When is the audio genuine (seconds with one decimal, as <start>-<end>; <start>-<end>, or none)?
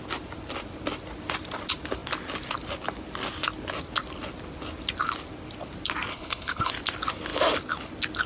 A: 0.0-6.1; 6.7-8.3